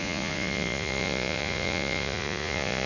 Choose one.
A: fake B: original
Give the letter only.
A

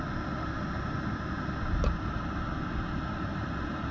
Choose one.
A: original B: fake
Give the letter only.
A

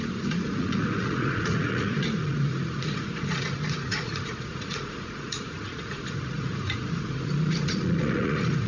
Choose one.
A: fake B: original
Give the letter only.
A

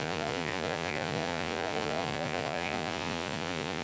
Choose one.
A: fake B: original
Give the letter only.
A